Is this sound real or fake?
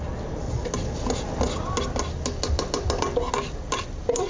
real